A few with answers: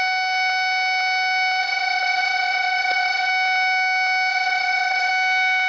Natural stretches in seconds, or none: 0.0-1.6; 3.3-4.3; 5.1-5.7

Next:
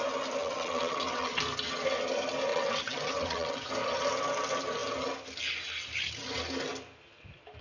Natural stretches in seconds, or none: 0.0-0.4; 1.4-2.5; 3.7-7.6

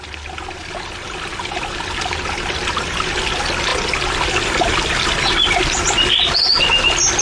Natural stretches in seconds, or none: 0.0-7.2

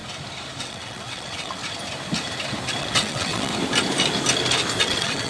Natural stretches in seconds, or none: 0.0-0.6; 1.6-2.8; 3.5-4.8

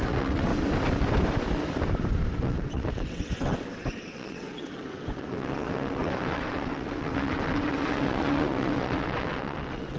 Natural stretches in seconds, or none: 0.5-2.4

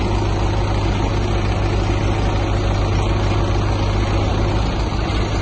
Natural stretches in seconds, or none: 0.0-5.4

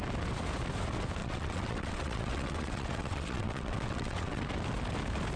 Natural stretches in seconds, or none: 0.0-1.2; 4.4-5.4